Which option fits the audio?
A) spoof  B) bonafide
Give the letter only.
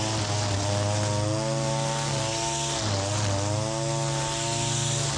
B